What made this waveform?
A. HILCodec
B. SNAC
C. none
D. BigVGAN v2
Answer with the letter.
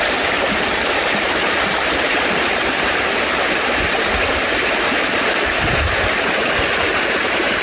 D